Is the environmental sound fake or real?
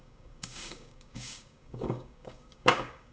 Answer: fake